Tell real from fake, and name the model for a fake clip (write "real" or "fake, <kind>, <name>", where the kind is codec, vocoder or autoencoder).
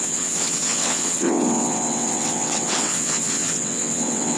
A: fake, vocoder, WaveNeXt